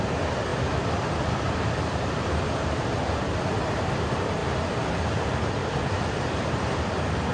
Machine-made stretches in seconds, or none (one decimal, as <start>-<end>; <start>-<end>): 0.0-0.5; 1.5-5.6; 6.2-7.3